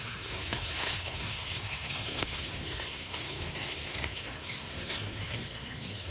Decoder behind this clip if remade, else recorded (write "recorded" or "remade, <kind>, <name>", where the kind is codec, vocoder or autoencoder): remade, codec, SNAC